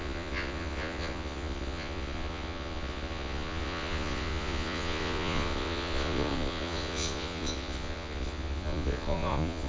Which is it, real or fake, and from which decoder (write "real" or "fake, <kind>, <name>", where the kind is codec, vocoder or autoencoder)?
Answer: fake, vocoder, Vocos